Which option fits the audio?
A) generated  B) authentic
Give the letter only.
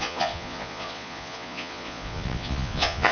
A